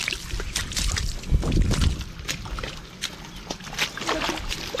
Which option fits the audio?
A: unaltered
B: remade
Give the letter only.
A